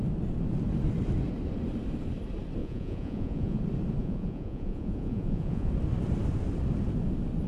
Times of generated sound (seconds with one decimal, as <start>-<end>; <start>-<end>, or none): 2.6-3.6; 4.0-5.7